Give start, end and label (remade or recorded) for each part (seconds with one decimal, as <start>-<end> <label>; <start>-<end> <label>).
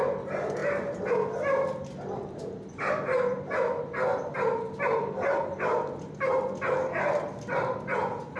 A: 0.0-8.4 recorded